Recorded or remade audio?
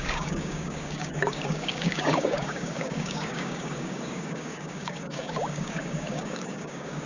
remade